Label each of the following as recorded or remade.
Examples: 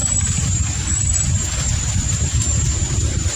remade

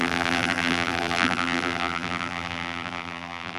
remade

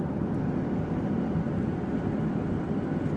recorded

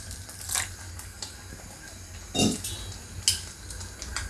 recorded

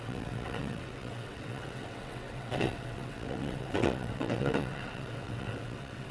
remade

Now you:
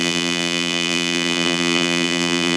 remade